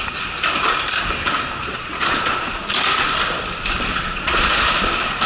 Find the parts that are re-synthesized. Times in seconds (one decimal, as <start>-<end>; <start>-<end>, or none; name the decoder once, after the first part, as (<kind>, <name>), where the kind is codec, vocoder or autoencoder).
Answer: 1.6-2.6 (vocoder, Vocos); 3.9-4.5